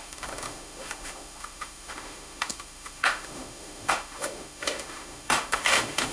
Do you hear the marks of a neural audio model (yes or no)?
yes